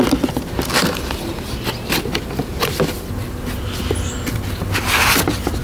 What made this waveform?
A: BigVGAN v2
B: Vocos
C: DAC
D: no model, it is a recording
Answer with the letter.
D